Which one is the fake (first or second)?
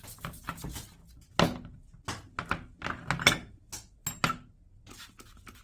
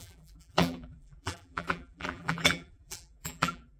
second